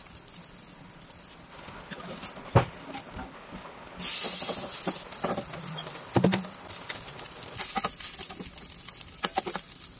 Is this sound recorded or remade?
recorded